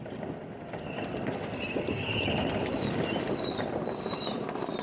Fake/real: real